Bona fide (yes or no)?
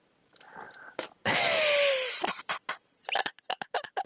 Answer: yes